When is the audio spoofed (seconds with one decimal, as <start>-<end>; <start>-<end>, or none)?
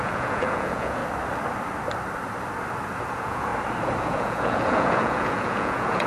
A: 0.0-1.0; 3.0-3.5; 4.0-6.1